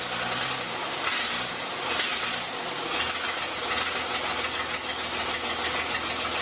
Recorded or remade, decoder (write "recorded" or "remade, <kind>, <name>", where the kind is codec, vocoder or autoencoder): recorded